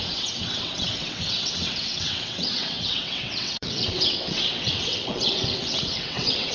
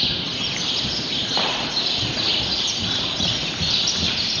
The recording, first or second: second